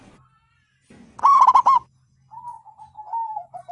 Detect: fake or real real